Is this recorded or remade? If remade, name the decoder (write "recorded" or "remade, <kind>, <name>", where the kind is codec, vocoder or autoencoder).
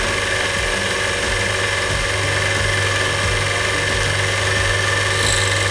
recorded